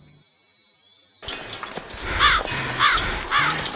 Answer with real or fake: real